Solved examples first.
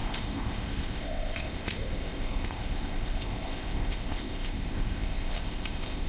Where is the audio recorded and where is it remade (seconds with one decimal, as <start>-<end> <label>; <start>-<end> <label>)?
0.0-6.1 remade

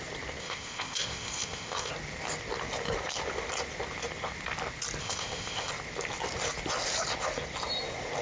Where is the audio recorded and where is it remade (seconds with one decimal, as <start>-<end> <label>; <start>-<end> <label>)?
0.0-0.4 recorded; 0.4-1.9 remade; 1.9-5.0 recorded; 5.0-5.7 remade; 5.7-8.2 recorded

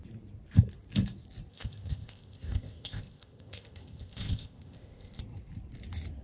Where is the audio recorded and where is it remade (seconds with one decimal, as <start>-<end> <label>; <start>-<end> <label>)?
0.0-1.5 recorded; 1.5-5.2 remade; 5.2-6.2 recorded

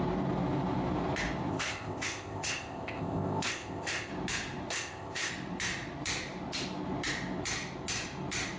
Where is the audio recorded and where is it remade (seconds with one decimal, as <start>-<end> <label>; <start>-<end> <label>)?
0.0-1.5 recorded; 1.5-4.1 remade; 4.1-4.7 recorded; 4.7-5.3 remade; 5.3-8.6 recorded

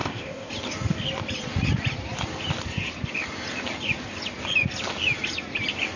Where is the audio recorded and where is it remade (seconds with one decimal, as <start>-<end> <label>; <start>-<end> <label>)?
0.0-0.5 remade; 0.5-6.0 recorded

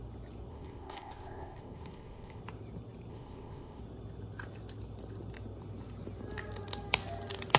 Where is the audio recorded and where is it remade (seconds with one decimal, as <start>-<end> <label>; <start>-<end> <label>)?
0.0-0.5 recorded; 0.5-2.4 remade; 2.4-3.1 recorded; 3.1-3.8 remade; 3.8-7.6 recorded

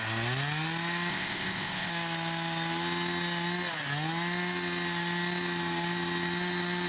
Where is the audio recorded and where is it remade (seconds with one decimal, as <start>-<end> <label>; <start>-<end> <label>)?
0.0-1.1 recorded; 1.1-1.9 remade; 1.9-6.9 recorded

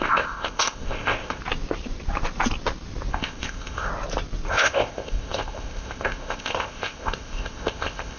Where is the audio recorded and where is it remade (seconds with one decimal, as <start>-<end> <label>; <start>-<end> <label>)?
0.0-1.4 remade; 1.4-3.1 recorded; 3.1-3.9 remade; 3.9-4.5 recorded; 4.5-8.2 remade